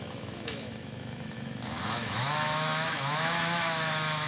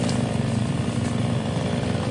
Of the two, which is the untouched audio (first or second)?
second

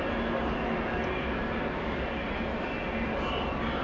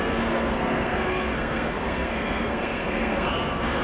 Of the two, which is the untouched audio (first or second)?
first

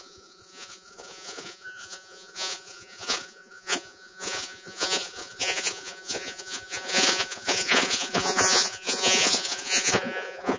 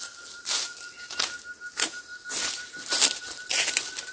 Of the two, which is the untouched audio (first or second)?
second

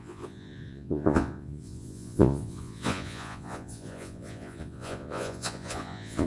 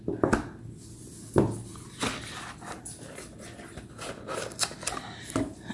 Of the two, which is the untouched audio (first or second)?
second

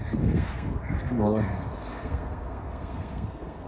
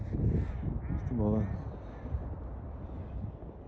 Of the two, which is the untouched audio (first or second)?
second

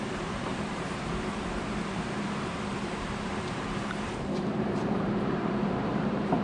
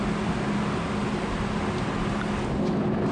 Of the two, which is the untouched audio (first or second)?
second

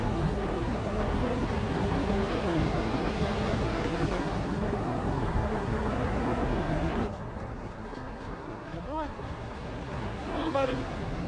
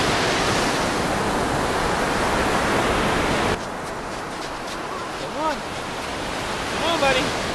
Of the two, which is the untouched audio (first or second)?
second